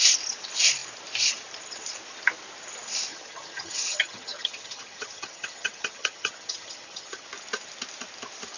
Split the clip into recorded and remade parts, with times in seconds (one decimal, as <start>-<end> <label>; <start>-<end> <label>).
0.0-3.1 recorded; 3.1-7.3 remade; 7.3-8.6 recorded